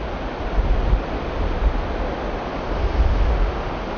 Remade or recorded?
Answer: recorded